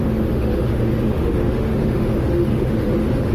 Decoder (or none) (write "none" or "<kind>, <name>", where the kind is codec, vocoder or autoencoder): autoencoder, DAC-VAE